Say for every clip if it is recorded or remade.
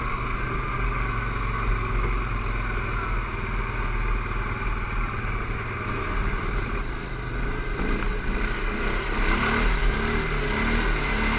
recorded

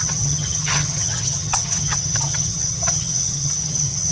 remade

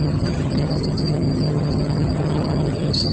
remade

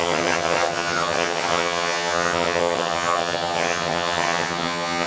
remade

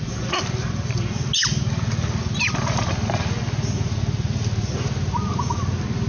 recorded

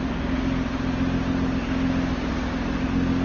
recorded